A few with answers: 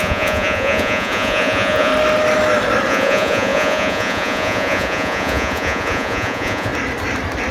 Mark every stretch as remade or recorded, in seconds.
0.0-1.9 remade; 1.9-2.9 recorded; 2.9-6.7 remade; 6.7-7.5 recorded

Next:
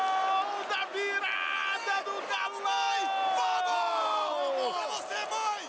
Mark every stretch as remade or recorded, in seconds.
0.0-5.7 recorded

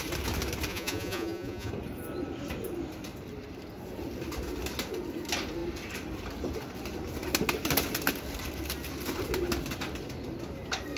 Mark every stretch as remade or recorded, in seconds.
0.0-0.7 recorded; 0.7-1.7 remade; 1.7-11.0 recorded